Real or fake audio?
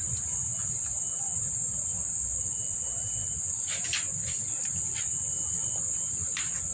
real